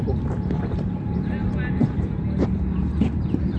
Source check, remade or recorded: remade